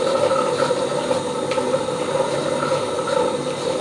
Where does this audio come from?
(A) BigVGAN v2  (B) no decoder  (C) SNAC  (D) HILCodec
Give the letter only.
B